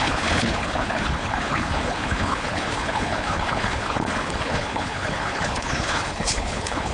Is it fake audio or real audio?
fake